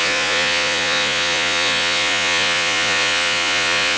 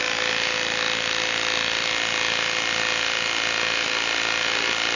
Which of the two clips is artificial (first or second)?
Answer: first